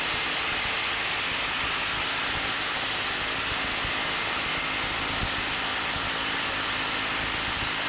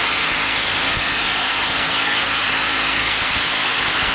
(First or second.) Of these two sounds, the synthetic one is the second